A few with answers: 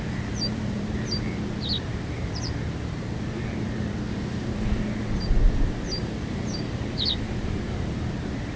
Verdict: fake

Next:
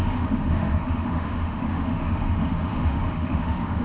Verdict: fake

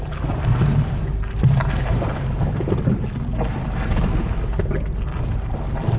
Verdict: real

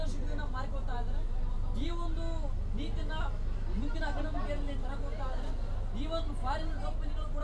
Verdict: real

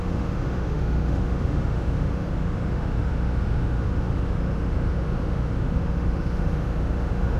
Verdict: fake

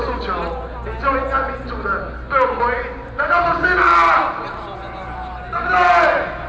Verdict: real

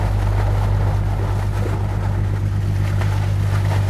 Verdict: real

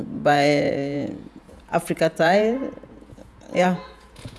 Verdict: fake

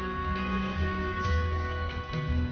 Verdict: fake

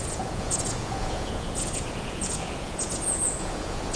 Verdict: fake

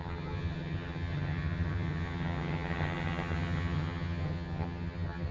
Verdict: fake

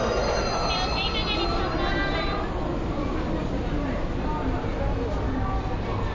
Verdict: real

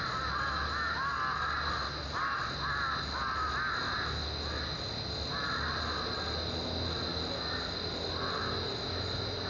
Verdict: real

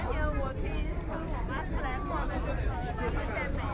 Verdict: real